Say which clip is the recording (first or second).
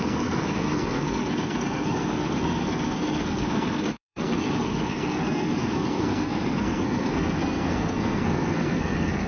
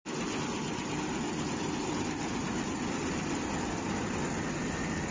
second